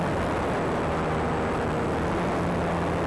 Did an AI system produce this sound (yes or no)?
no